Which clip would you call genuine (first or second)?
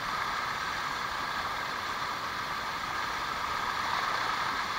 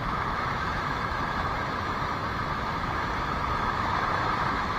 first